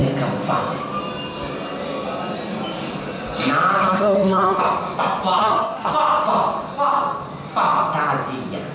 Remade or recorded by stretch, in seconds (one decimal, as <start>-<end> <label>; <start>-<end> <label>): 0.0-3.8 recorded; 3.8-4.6 remade; 4.6-5.4 recorded; 5.4-5.9 remade; 5.9-8.7 recorded